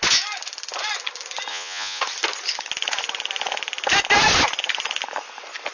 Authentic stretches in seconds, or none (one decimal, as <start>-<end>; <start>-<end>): 0.0-1.5; 2.0-5.7